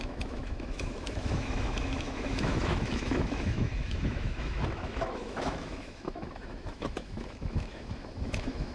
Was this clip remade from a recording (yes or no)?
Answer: yes